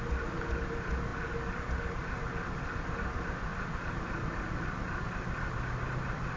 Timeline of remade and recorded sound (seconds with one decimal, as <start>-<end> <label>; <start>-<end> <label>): 0.0-6.4 recorded